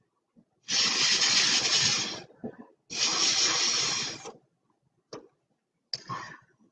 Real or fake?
real